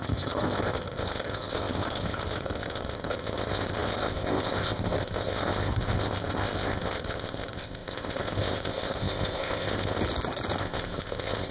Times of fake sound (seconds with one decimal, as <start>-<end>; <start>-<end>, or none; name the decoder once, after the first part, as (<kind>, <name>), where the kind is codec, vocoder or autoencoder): 0.0-10.0 (codec, ZipCodec); 10.6-11.5